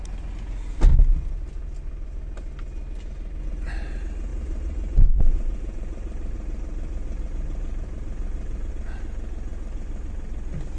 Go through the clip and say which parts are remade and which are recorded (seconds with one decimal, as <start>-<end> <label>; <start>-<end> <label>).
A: 0.0-4.3 recorded; 4.3-8.7 remade; 8.7-9.5 recorded; 9.5-10.1 remade; 10.1-10.8 recorded